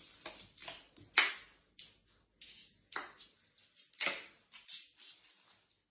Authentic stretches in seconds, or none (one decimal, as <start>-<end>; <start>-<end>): 0.0-5.9